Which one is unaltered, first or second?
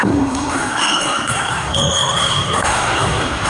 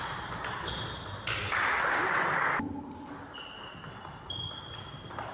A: second